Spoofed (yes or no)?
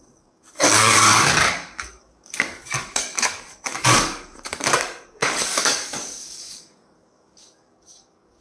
yes